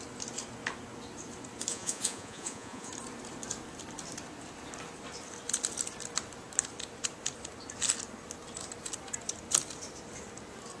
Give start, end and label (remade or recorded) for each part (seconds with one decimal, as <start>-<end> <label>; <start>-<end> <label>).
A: 0.0-1.7 recorded; 1.7-2.9 remade; 2.9-10.8 recorded